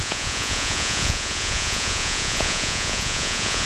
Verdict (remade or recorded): remade